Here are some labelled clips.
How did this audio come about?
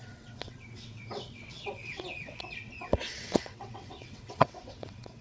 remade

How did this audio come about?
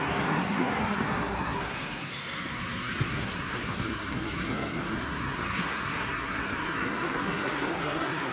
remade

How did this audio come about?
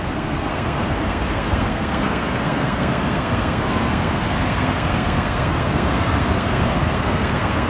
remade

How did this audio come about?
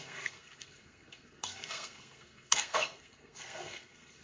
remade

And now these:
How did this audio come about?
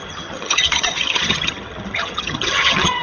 remade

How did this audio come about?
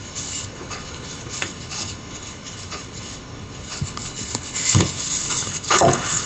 remade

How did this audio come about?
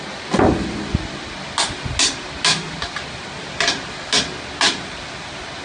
recorded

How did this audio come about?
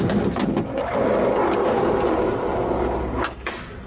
recorded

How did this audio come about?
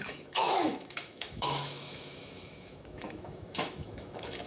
remade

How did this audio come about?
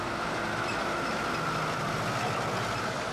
recorded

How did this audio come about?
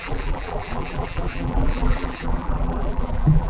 remade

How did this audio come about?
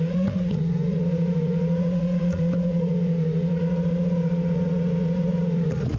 remade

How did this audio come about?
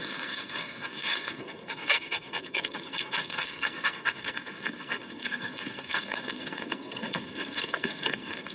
remade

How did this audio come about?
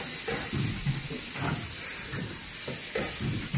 recorded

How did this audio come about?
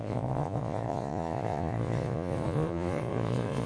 remade